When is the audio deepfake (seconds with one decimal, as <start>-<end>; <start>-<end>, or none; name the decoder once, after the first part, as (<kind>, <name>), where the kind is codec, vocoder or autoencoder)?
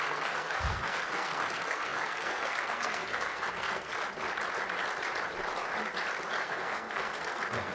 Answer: 0.0-3.9 (codec, SNAC); 6.3-7.7